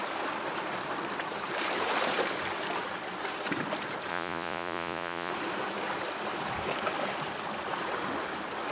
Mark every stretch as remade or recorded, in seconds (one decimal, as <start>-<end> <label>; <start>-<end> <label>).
0.0-4.1 recorded; 4.1-5.3 remade; 5.3-8.7 recorded